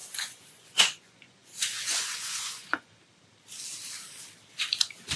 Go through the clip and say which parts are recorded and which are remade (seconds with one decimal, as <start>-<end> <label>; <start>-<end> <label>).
0.0-3.0 remade; 3.0-5.2 recorded